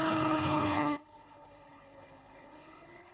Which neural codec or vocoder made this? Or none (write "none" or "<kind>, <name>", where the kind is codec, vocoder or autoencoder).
codec, HILCodec